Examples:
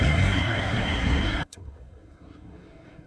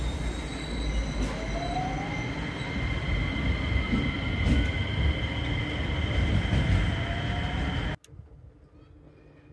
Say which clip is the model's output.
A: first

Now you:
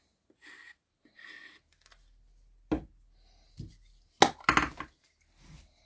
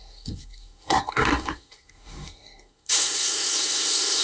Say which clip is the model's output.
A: second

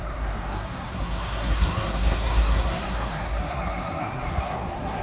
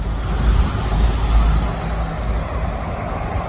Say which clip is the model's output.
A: first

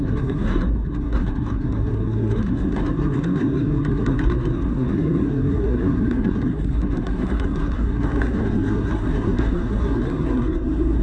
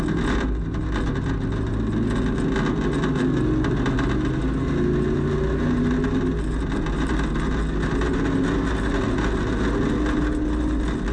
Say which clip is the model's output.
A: first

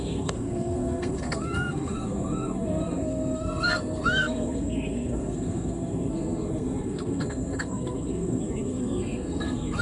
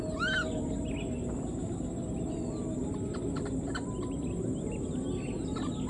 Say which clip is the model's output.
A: first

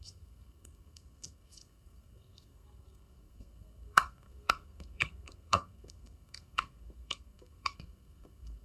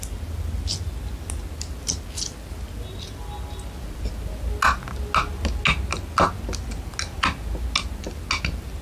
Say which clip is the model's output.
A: first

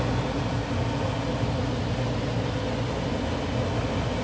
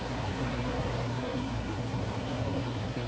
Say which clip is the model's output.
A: second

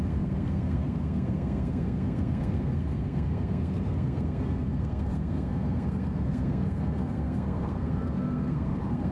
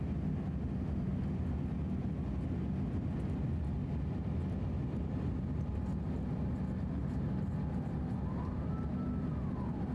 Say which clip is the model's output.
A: first